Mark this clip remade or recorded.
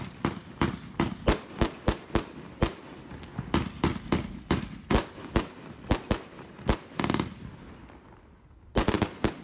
recorded